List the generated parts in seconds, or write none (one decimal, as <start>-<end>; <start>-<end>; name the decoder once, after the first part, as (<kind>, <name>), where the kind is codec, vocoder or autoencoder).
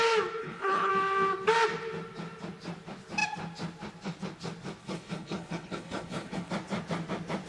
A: 0.4-0.9 (codec, HILCodec); 4.8-6.5